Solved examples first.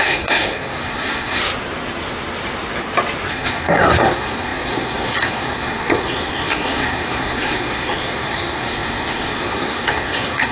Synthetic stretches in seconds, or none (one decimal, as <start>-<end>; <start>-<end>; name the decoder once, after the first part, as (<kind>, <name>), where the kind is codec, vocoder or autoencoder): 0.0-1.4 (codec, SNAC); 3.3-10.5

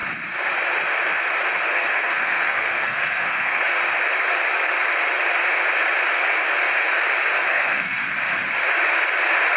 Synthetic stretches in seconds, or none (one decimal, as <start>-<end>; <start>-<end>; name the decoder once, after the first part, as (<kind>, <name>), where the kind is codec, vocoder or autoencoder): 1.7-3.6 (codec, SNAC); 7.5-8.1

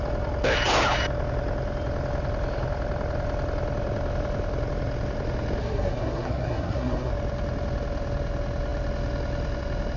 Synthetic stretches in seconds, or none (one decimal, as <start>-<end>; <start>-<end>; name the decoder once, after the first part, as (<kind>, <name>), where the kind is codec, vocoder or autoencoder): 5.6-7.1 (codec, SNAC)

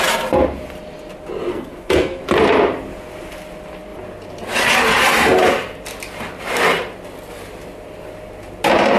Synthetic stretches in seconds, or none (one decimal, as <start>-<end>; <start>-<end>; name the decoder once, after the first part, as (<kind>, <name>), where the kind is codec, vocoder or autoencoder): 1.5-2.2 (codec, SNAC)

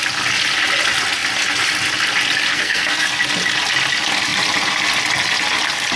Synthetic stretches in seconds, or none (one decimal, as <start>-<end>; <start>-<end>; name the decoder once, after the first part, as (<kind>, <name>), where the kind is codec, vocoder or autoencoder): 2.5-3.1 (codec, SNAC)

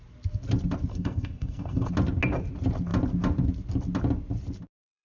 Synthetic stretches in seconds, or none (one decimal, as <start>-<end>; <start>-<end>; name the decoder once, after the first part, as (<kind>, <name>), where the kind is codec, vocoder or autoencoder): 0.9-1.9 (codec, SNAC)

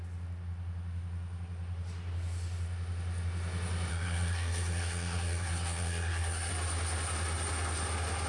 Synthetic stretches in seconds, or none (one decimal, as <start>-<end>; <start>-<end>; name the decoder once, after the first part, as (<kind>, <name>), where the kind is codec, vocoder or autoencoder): 3.9-6.5 (codec, SNAC)

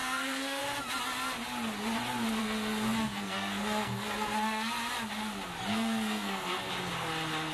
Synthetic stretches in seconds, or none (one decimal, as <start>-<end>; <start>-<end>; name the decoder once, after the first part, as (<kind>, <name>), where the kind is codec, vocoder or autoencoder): 0.0-0.6 (codec, SNAC); 2.4-4.7; 5.7-6.7